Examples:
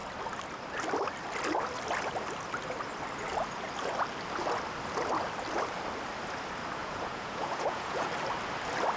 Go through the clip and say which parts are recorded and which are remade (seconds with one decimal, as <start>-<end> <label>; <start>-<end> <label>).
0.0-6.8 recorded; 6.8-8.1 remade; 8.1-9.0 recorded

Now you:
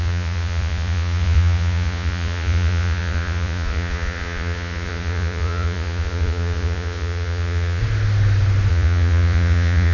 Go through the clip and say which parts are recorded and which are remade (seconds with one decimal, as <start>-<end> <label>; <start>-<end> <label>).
0.0-7.8 remade; 7.8-8.7 recorded; 8.7-9.9 remade

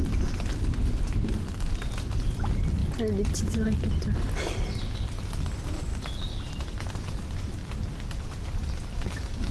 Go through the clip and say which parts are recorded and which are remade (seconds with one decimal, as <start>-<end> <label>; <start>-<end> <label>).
0.0-9.5 recorded

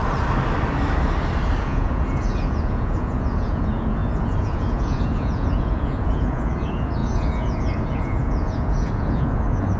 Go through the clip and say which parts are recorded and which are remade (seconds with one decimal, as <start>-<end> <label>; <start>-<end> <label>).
0.0-1.6 recorded; 1.6-9.8 remade

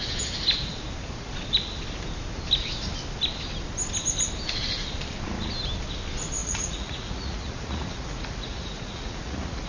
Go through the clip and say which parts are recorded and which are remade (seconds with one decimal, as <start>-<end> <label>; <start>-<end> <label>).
0.0-6.4 recorded; 6.4-9.7 remade

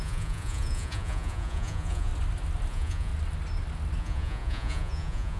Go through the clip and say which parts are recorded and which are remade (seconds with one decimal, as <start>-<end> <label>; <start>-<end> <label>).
0.0-2.1 remade; 2.1-2.7 recorded; 2.7-3.1 remade; 3.1-4.0 recorded; 4.0-5.4 remade

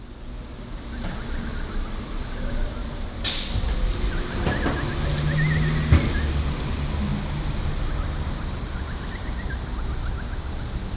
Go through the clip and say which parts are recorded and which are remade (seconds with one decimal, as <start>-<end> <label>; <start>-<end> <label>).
0.0-11.0 recorded

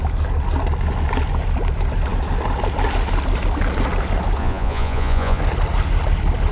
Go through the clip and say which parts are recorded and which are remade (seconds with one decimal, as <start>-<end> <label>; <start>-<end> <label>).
0.0-4.4 recorded; 4.4-5.4 remade; 5.4-6.5 recorded